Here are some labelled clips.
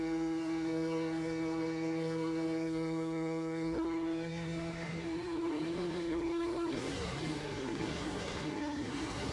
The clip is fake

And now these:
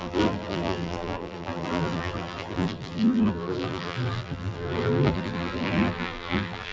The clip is fake